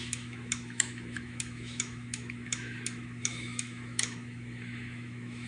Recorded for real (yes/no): no